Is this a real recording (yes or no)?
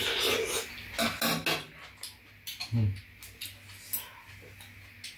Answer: yes